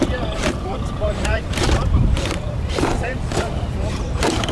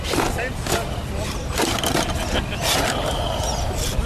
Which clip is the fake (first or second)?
first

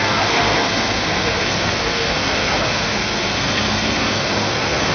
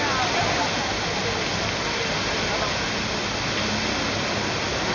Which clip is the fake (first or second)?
first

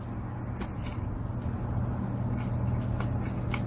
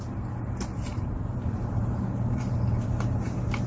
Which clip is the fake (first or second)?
second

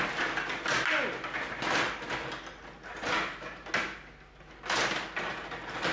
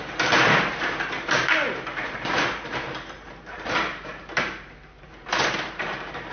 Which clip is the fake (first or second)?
second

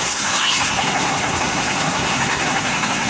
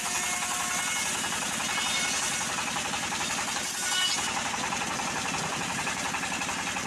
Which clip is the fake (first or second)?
first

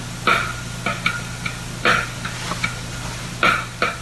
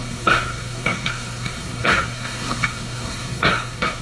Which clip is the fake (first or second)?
second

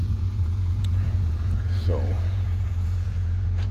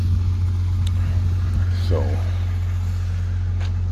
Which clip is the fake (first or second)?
first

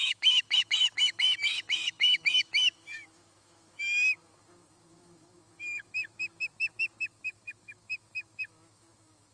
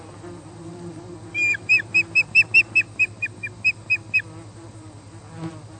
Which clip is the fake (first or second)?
first